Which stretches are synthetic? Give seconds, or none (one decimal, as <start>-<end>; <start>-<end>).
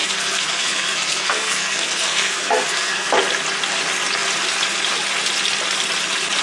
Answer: 0.0-3.1